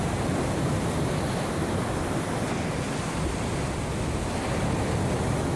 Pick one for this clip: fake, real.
real